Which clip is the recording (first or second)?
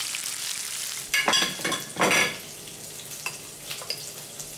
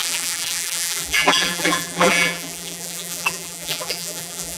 first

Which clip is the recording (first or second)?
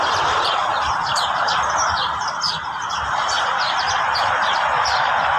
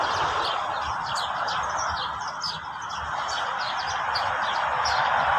second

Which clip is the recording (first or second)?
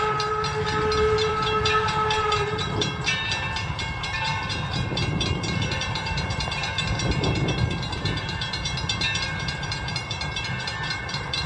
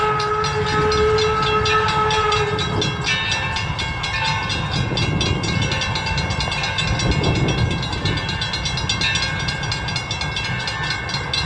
second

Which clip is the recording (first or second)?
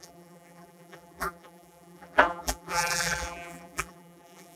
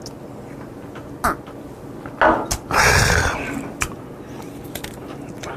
second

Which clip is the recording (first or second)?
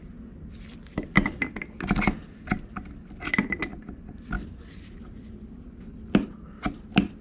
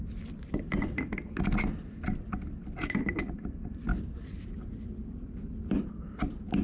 first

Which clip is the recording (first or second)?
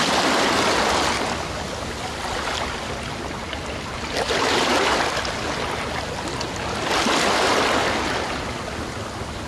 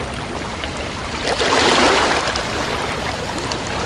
first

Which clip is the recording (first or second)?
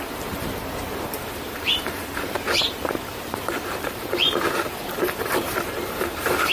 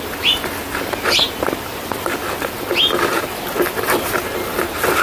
second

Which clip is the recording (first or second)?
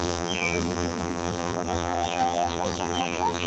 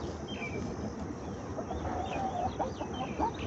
second